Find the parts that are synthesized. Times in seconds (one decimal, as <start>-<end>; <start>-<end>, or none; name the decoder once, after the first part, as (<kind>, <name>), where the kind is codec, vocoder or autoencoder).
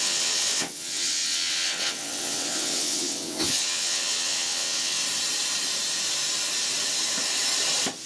0.0-5.0 (vocoder, WaveNeXt)